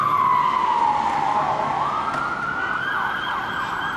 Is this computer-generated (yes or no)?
no